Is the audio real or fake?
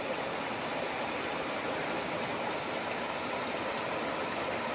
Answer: real